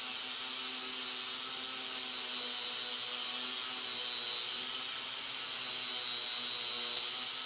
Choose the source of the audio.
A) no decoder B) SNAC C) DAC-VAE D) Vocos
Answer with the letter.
A